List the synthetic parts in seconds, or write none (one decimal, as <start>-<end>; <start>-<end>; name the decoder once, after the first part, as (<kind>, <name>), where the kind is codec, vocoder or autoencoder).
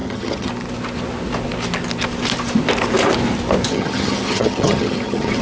0.0-0.5 (vocoder, HiFi-GAN); 3.7-5.4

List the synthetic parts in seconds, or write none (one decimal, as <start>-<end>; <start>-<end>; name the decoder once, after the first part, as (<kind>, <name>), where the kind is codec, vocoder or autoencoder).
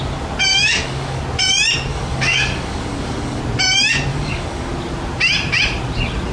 0.5-1.2 (codec, DAC); 1.9-3.4; 4.1-4.7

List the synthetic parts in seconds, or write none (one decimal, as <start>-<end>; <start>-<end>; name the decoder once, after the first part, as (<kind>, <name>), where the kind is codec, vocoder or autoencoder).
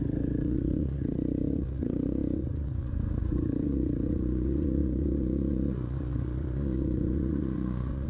0.0-8.1 (vocoder, Vocos)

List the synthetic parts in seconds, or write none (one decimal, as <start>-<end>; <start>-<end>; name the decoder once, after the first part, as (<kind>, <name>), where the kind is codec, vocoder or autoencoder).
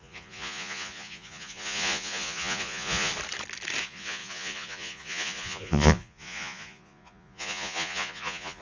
0.0-3.1 (vocoder, Vocos); 3.8-8.6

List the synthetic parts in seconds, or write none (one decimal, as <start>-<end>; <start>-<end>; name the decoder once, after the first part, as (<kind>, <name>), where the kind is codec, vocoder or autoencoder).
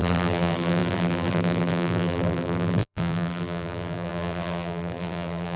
0.0-5.6 (vocoder, BigVGAN v2)